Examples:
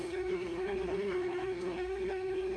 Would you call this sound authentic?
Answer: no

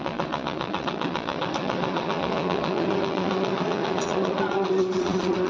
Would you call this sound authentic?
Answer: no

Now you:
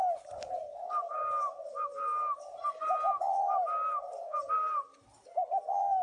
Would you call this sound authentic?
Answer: yes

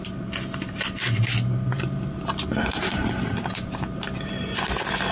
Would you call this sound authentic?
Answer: yes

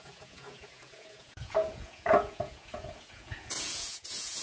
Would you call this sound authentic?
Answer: no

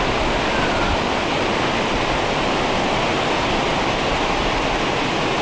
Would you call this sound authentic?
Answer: yes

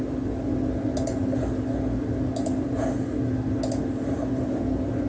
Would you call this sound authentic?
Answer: yes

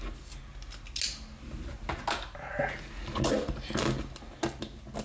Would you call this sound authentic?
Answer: yes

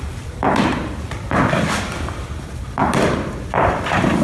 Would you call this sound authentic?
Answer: no